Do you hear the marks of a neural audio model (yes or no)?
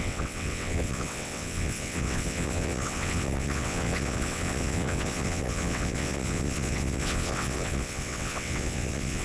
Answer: yes